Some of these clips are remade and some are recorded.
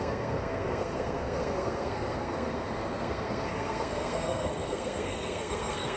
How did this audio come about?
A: remade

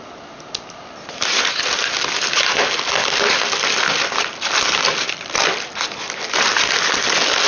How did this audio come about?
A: recorded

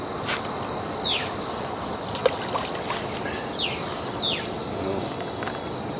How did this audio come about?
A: recorded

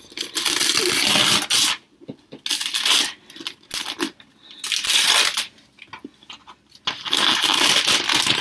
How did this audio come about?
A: recorded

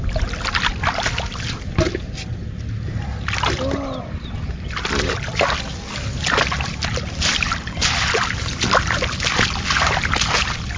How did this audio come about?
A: recorded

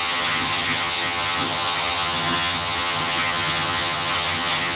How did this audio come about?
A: remade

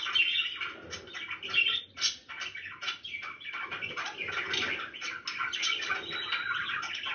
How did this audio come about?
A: recorded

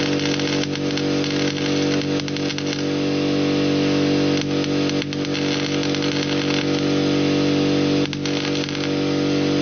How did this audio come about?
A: recorded